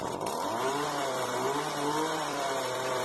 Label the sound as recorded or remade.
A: remade